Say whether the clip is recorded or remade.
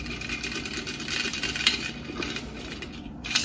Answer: recorded